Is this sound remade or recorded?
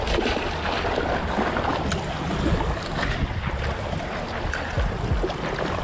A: recorded